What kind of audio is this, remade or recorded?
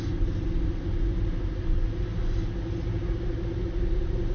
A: recorded